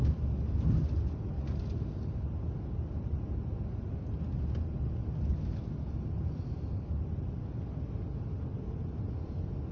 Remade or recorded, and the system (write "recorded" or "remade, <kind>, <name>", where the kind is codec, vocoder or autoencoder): recorded